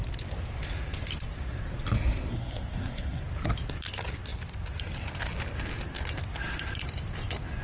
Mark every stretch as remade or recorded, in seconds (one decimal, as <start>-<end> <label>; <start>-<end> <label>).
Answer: 0.0-2.3 recorded; 2.3-3.2 remade; 3.2-7.6 recorded